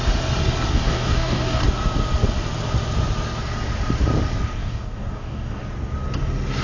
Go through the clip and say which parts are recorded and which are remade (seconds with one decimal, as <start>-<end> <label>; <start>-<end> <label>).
0.0-0.7 recorded; 0.7-1.6 remade; 1.6-4.6 recorded; 4.6-5.6 remade; 5.6-6.6 recorded